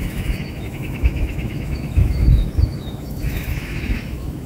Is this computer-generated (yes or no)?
yes